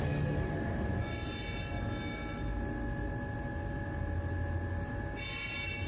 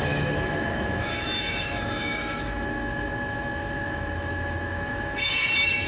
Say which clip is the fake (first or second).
second